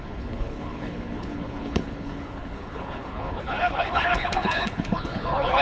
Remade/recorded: remade